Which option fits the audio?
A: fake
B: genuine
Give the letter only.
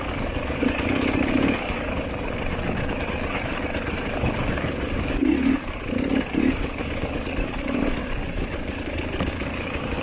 A